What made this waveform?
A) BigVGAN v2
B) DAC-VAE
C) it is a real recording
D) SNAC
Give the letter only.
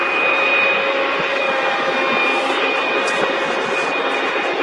C